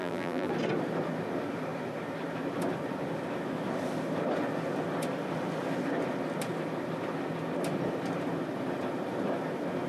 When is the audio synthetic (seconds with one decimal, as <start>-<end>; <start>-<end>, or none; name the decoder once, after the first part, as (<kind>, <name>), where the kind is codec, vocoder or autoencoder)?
0.0-0.5 (vocoder, BigVGAN v2)